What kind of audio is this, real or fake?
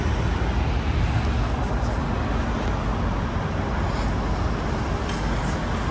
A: real